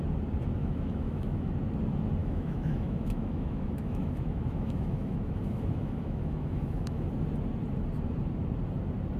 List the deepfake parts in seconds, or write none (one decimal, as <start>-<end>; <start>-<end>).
0.6-1.5; 2.2-7.1